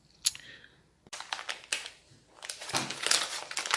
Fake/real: real